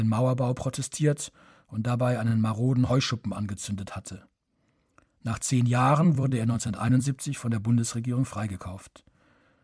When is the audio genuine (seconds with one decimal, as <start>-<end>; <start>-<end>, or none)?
0.0-3.6; 7.2-9.6